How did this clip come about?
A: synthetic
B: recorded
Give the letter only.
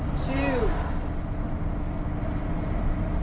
B